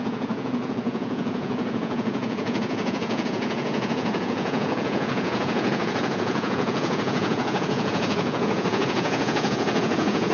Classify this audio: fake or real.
fake